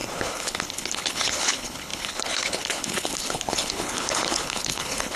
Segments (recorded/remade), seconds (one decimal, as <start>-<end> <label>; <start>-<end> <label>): 0.0-5.2 remade